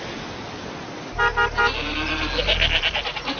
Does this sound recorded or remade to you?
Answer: recorded